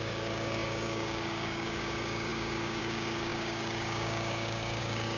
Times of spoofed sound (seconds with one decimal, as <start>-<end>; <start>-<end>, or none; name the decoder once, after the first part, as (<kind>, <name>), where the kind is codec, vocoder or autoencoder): 0.0-5.2 (codec, DAC)